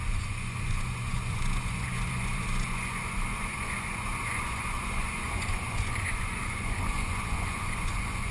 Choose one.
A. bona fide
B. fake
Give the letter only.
B